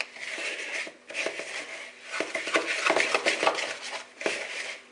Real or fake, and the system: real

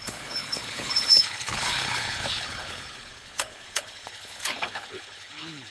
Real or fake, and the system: fake, codec, HILCodec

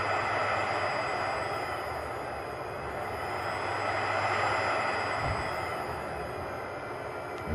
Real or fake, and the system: real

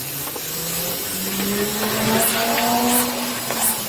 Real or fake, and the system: real